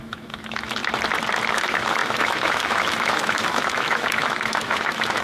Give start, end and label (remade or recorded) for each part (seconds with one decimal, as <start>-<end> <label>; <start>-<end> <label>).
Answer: 0.0-0.8 remade; 0.8-1.5 recorded; 1.5-5.2 remade